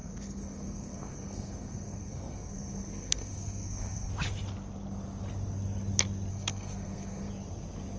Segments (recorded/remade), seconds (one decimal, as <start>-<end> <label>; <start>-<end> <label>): 0.0-4.1 remade; 4.1-6.3 recorded; 6.3-7.3 remade; 7.3-8.0 recorded

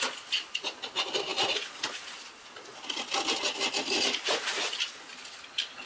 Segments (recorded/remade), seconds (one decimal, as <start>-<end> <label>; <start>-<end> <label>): 0.0-5.9 recorded

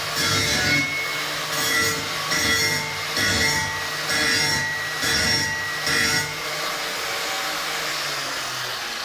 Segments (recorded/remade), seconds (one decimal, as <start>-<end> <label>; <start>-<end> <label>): 0.0-9.0 recorded